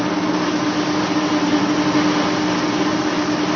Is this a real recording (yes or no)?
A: yes